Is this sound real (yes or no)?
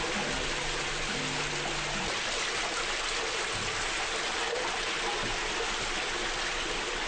yes